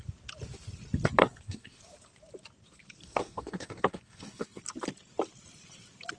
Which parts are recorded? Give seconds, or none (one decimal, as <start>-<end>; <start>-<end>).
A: 0.0-1.2; 1.8-3.0; 4.6-6.2